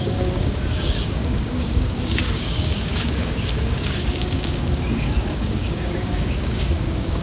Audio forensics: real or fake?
fake